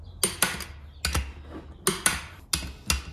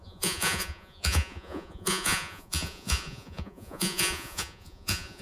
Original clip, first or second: first